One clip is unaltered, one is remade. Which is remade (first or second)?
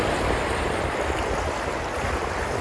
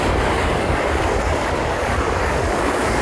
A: second